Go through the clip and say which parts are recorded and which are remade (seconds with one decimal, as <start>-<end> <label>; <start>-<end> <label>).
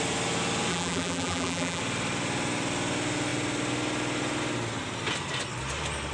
0.0-0.7 recorded; 0.7-1.8 remade; 1.8-6.1 recorded